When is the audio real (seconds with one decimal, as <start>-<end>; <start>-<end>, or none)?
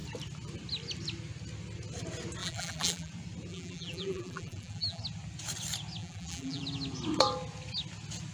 0.0-2.4; 3.1-3.5; 5.0-6.0; 6.6-8.3